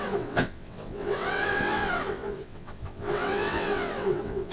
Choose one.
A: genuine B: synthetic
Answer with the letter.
B